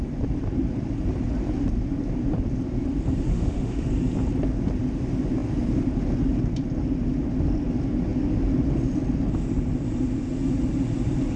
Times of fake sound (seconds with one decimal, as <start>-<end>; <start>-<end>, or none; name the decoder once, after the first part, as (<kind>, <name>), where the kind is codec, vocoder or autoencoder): 3.3-3.9 (autoencoder, DAC-VAE)